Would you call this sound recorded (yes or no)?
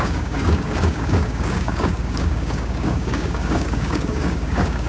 no